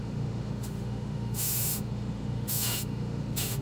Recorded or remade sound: remade